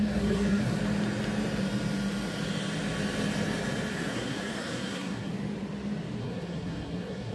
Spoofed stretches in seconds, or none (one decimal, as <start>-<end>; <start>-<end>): 0.0-0.8; 3.9-5.3; 6.2-7.3